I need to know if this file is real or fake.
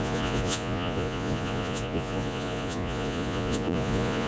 fake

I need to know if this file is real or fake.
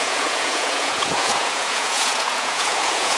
fake